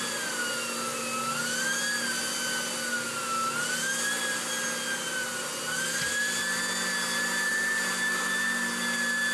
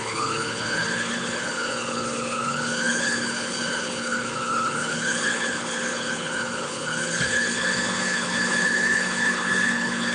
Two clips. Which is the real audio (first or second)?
first